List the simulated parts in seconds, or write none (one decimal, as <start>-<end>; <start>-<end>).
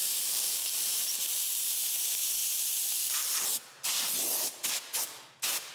0.0-1.6; 2.4-4.1